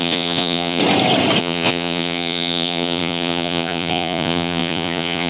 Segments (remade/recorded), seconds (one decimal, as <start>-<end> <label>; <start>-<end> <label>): 0.0-0.8 remade; 0.8-1.4 recorded; 1.4-5.3 remade

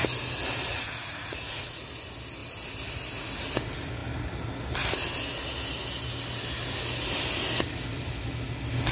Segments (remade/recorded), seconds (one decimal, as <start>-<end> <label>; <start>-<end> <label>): 0.0-0.7 recorded; 0.7-1.8 remade; 1.8-8.9 recorded

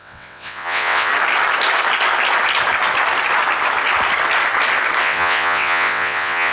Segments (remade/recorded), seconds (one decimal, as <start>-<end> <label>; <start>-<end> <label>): 0.0-1.1 remade; 1.1-5.0 recorded; 5.0-6.5 remade

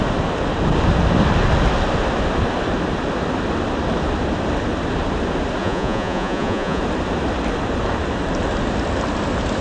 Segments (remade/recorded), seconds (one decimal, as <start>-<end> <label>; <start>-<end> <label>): 0.0-5.6 recorded; 5.6-6.8 remade; 6.8-9.6 recorded

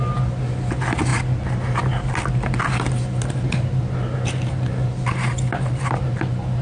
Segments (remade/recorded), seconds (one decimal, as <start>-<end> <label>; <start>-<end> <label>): 0.0-6.6 recorded